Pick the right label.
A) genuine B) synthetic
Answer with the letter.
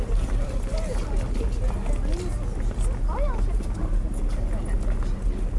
A